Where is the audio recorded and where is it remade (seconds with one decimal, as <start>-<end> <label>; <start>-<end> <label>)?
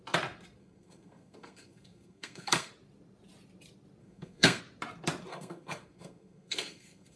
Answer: 0.0-0.6 recorded; 0.6-2.7 remade; 2.7-4.0 recorded; 4.0-4.6 remade; 4.6-5.3 recorded; 5.3-7.2 remade